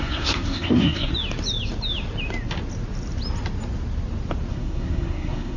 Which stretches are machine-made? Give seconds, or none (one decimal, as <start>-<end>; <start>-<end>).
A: 0.0-1.1; 4.5-5.6